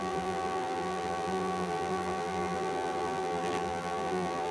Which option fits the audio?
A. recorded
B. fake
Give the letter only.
B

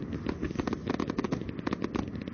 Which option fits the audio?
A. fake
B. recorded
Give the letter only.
B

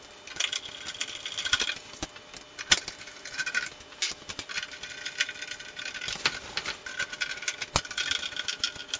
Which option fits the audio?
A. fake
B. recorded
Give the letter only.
B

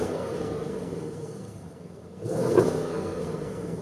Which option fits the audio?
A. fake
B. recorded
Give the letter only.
A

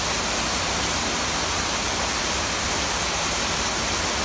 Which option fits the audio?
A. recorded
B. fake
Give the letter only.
A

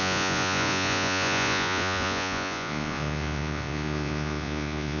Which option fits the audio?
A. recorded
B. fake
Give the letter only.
B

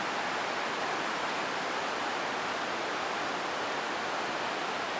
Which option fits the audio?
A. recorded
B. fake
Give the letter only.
A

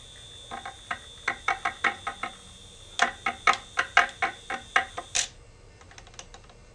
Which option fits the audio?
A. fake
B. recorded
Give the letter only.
B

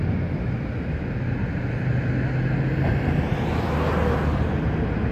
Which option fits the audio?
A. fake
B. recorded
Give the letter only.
B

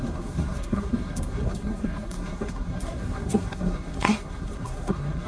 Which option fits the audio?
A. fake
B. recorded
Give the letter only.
A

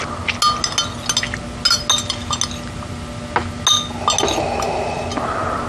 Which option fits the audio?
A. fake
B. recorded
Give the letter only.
B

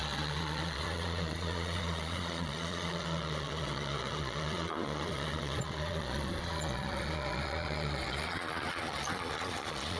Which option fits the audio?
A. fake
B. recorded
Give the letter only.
A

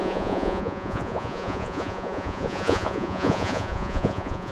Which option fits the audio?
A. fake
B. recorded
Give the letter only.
A